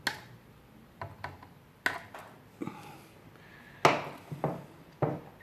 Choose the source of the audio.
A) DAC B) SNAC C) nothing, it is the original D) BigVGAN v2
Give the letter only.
C